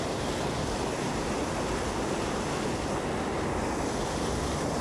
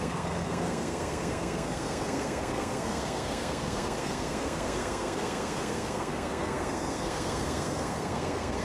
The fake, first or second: second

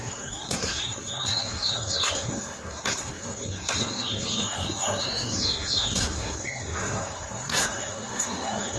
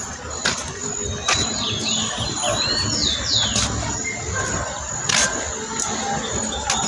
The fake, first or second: first